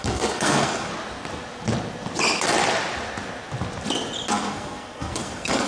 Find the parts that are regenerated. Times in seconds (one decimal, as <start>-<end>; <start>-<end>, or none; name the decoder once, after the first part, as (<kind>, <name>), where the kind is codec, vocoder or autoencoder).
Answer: 0.0-0.9 (codec, SNAC); 4.3-5.7